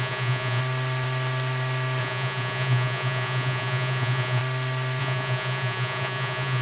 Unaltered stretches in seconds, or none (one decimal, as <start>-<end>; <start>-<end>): 0.6-2.0; 4.4-5.0

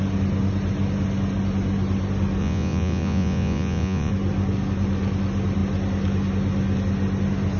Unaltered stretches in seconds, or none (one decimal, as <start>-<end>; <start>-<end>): 0.0-2.4; 4.1-7.6

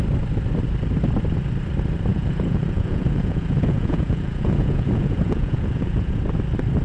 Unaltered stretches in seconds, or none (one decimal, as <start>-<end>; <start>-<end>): 0.0-2.1; 6.2-6.8

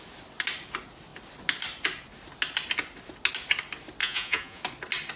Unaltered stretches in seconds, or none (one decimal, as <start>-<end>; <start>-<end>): 0.0-4.0; 4.6-5.2